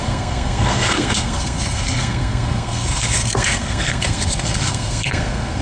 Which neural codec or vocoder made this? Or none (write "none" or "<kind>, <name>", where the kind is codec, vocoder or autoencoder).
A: codec, SNAC